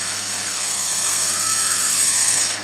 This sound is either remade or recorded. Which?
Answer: remade